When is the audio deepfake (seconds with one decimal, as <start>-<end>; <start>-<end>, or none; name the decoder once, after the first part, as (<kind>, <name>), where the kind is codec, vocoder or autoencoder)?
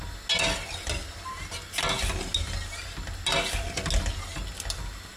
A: none